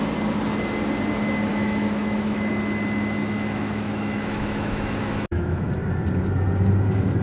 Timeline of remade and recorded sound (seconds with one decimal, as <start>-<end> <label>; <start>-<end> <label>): 0.0-1.5 recorded; 1.5-2.5 remade; 2.5-3.2 recorded; 3.2-5.7 remade; 5.7-7.2 recorded